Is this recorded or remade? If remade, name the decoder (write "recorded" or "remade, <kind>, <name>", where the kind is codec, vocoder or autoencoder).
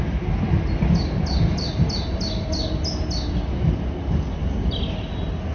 recorded